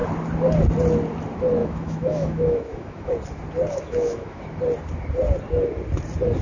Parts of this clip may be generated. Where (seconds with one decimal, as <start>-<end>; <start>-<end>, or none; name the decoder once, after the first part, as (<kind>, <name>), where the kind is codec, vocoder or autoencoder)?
1.6-3.1 (autoencoder, DAC-VAE); 3.7-4.4